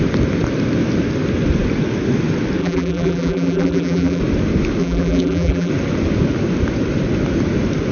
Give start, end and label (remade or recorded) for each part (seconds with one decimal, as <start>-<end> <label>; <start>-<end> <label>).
0.0-2.6 recorded; 2.6-4.2 remade; 4.2-4.8 recorded; 4.8-5.7 remade; 5.7-7.9 recorded